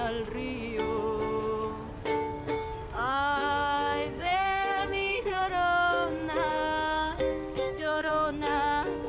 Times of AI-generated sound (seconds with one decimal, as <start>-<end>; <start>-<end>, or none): 2.0-5.4; 6.5-8.1